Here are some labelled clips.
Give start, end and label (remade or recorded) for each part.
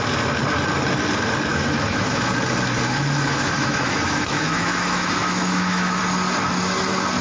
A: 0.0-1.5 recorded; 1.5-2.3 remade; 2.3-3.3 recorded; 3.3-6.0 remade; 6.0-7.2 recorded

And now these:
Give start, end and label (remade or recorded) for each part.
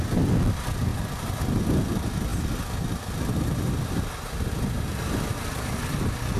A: 0.0-6.4 recorded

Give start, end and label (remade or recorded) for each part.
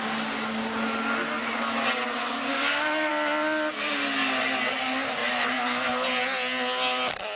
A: 0.0-2.5 recorded; 2.5-3.1 remade; 3.1-7.4 recorded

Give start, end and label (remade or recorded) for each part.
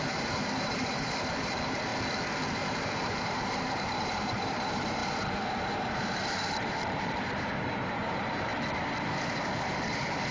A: 0.0-1.9 remade; 1.9-2.5 recorded; 2.5-8.5 remade; 8.5-9.0 recorded; 9.0-10.3 remade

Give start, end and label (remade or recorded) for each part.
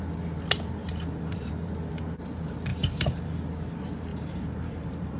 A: 0.0-0.8 recorded; 0.8-1.7 remade; 1.7-2.7 recorded; 2.7-3.3 remade; 3.3-4.1 recorded; 4.1-5.2 remade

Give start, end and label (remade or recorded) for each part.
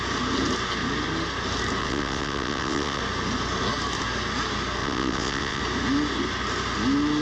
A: 0.0-1.8 recorded; 1.8-3.0 remade; 3.0-4.8 recorded; 4.8-5.6 remade; 5.6-7.2 recorded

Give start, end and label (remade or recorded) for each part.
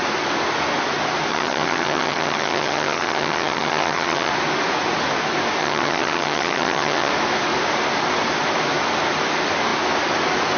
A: 0.0-1.3 recorded; 1.3-4.3 remade; 4.3-5.6 recorded; 5.6-7.1 remade; 7.1-10.6 recorded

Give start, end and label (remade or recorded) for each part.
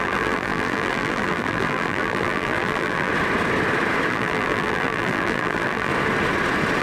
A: 0.0-3.1 remade; 3.1-4.1 recorded; 4.1-5.9 remade; 5.9-6.8 recorded